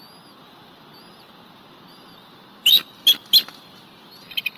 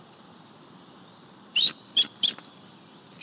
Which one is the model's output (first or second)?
second